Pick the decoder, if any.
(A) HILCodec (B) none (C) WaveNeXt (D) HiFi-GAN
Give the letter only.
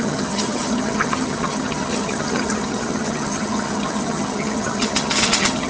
D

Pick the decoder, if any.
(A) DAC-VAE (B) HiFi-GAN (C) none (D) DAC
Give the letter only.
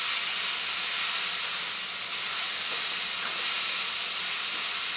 C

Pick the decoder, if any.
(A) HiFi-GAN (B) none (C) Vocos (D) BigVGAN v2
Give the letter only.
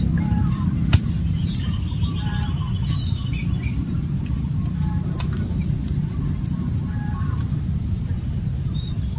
B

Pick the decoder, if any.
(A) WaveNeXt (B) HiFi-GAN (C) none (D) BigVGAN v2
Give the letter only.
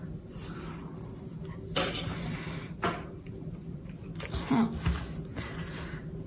C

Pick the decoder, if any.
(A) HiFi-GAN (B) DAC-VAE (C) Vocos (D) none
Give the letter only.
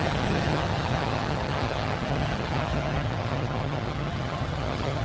A